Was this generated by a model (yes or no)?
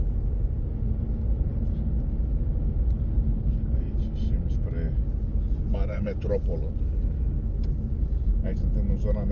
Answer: no